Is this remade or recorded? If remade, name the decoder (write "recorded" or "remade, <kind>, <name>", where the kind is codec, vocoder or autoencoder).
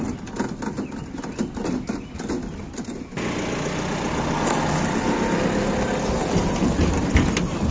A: recorded